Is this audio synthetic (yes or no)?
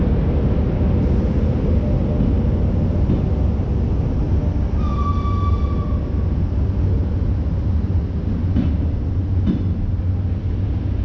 no